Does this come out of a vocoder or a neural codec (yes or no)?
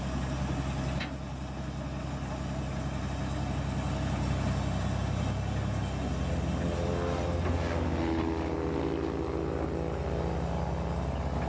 no